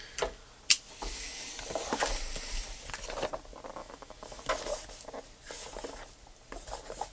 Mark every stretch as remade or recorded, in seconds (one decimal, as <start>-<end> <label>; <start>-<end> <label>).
0.0-3.8 recorded; 3.8-4.4 remade; 4.4-7.1 recorded